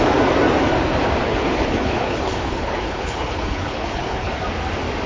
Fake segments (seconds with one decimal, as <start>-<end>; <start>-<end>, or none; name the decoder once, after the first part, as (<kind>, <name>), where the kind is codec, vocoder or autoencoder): 1.2-4.3 (codec, HILCodec)